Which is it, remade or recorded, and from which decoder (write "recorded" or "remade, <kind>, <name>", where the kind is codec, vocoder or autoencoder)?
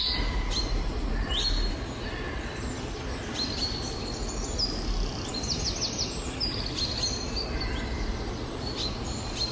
recorded